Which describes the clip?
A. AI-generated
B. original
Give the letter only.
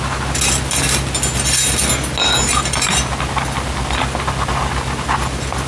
B